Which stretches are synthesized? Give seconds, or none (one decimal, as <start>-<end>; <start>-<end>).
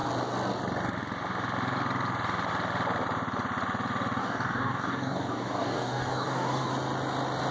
4.2-6.7